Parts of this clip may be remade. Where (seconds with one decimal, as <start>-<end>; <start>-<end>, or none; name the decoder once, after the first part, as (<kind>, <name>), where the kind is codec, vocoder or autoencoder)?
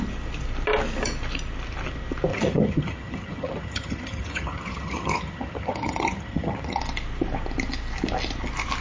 2.3-6.8 (vocoder, HiFi-GAN)